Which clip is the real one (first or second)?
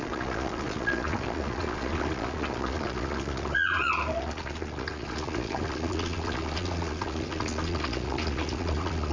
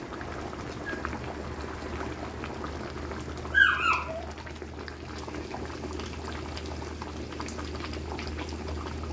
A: second